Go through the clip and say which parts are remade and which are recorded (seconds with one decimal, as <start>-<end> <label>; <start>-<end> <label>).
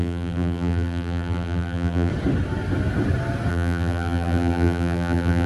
0.0-2.1 remade; 2.1-3.5 recorded; 3.5-5.5 remade